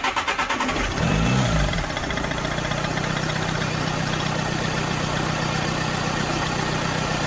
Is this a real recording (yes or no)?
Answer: no